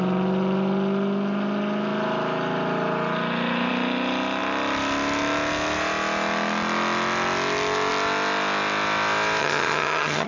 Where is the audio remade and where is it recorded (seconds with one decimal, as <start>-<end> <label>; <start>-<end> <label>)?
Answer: 0.0-9.4 recorded; 9.4-10.3 remade